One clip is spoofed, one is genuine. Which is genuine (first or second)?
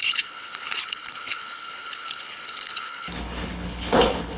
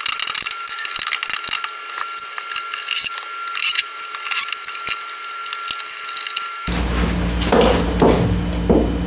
second